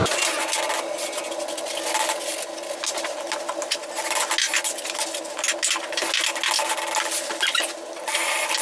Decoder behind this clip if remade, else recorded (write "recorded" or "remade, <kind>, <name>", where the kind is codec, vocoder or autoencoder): recorded